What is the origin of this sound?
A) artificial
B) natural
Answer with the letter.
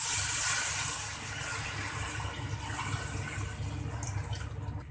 B